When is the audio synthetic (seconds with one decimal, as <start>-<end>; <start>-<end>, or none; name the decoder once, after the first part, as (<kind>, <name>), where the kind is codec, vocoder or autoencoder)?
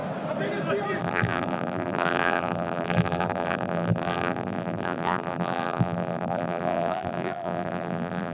1.0-8.3 (vocoder, BigVGAN v2)